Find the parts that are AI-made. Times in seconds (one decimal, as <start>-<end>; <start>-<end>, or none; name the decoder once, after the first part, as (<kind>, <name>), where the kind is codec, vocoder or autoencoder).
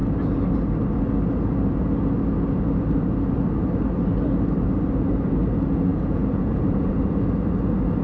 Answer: 5.9-7.0 (vocoder, Vocos)